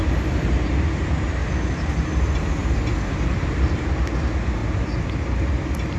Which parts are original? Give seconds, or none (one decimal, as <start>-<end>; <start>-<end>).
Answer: 0.0-2.6; 3.9-4.6; 5.1-6.0